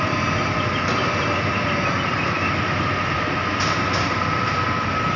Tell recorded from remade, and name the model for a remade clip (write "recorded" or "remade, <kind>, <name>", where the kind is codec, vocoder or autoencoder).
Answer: recorded